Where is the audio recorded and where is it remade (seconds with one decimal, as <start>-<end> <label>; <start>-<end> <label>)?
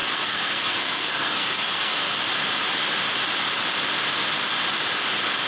0.0-2.2 remade; 2.2-5.5 recorded